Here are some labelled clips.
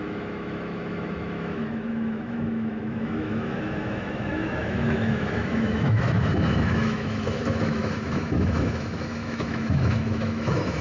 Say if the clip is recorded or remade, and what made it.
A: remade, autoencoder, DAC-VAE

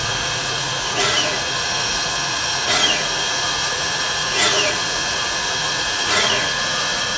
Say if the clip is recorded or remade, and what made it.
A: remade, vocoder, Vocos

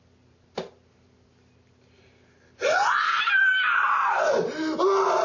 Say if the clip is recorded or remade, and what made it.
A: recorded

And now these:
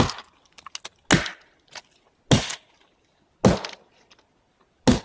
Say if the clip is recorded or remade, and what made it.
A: recorded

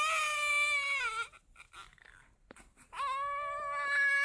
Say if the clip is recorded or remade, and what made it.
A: recorded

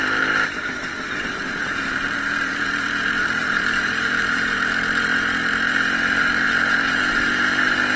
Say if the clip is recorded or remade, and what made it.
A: remade, vocoder, BigVGAN v2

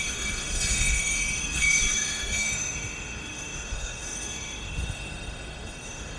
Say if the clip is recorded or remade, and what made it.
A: remade, autoencoder, DAC-VAE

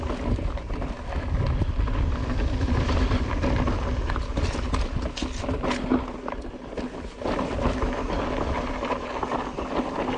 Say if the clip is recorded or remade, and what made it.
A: recorded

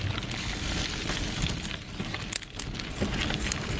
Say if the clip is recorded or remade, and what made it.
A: recorded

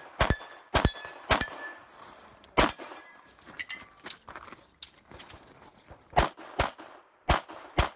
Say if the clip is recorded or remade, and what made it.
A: recorded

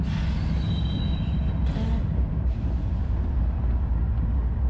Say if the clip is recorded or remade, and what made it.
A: recorded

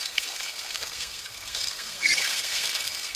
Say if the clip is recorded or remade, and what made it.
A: remade, codec, SNAC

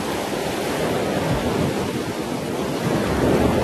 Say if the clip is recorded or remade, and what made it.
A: recorded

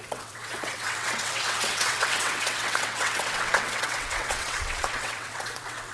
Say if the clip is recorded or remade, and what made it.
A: remade, vocoder, WaveNeXt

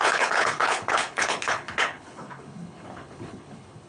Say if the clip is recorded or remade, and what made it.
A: remade, codec, HILCodec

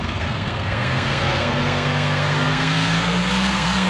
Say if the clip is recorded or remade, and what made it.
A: remade, codec, SNAC